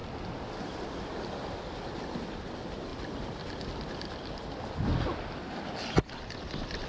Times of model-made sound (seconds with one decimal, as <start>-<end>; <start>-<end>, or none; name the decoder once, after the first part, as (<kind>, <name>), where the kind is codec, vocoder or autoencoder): none